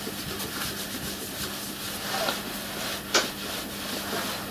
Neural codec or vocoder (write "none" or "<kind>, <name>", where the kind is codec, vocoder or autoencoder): none